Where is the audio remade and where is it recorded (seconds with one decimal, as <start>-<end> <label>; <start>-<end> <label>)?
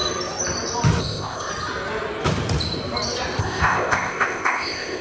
0.0-1.0 recorded; 1.0-1.5 remade; 1.5-3.4 recorded; 3.4-5.0 remade